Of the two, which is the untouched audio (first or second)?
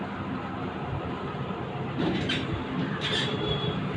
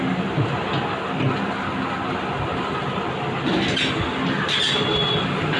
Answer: second